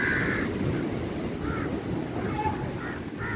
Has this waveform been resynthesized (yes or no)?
no